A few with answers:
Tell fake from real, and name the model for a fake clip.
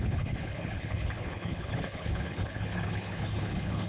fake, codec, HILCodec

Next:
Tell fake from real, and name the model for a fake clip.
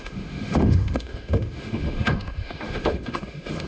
fake, autoencoder, DAC-VAE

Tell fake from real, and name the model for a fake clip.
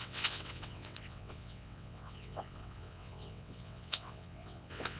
fake, vocoder, WaveNeXt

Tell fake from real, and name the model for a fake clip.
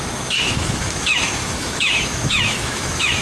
fake, autoencoder, DAC-VAE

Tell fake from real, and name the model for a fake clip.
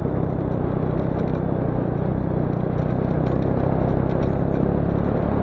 real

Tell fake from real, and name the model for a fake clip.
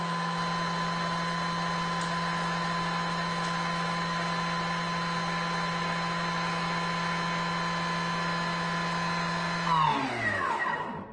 real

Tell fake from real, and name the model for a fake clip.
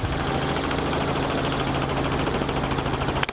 real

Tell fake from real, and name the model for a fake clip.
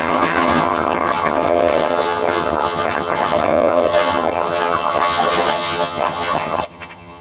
fake, vocoder, HiFi-GAN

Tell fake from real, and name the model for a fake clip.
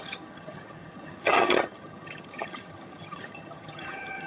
fake, vocoder, HiFi-GAN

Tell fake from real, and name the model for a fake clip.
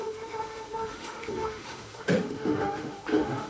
fake, autoencoder, DAC-VAE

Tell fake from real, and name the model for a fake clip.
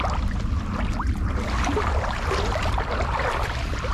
real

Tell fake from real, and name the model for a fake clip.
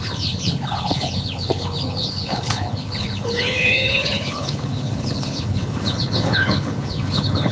fake, codec, HILCodec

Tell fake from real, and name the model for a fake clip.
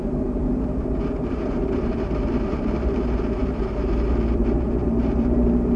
fake, vocoder, BigVGAN v2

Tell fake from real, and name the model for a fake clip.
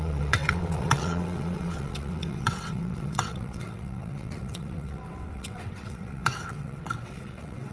fake, vocoder, WaveNeXt